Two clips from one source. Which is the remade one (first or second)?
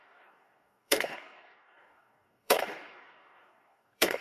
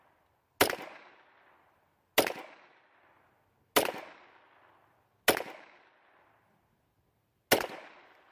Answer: first